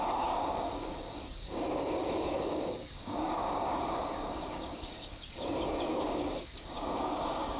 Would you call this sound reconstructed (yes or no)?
yes